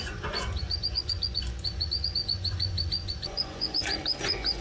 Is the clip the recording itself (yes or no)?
no